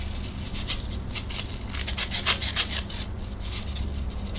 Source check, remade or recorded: recorded